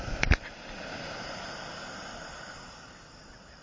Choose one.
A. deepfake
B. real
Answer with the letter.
B